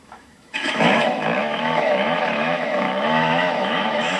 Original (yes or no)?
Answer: no